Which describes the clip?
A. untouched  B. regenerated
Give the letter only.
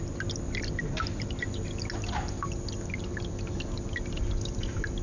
A